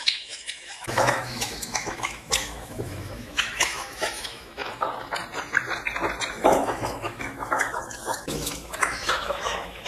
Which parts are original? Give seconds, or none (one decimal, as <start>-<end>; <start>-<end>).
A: 4.6-6.3